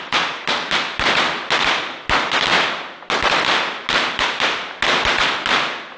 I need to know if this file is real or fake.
real